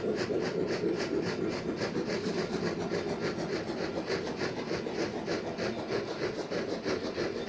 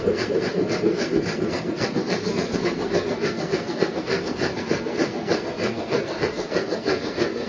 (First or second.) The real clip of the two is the first